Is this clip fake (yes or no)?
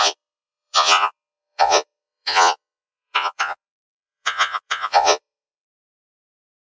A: yes